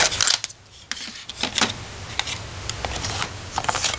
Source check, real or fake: real